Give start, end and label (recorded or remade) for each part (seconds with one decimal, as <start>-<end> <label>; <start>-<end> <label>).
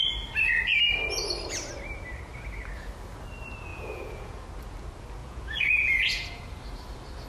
0.0-3.7 recorded; 3.7-4.4 remade; 4.4-5.2 recorded; 5.2-6.4 remade; 6.4-7.3 recorded